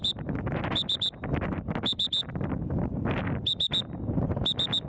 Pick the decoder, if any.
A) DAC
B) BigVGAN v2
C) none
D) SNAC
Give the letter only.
C